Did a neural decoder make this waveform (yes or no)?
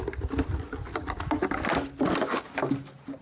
no